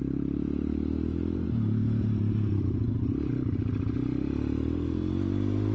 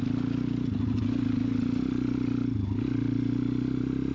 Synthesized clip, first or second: first